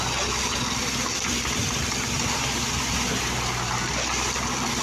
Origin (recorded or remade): recorded